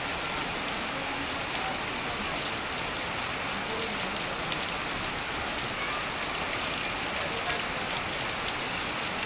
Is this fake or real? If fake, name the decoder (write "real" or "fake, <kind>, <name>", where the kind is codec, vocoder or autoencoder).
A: real